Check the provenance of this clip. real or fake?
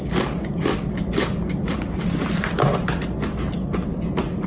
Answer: real